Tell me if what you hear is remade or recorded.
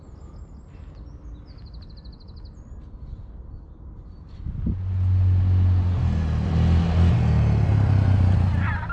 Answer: recorded